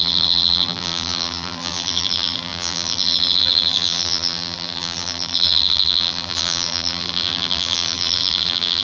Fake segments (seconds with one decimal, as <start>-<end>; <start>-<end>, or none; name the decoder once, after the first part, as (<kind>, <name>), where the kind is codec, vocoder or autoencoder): 0.0-8.8 (vocoder, BigVGAN v2)